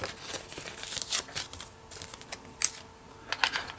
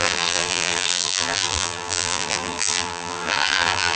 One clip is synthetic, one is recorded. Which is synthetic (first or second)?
second